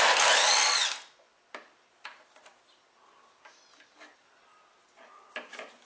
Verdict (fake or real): real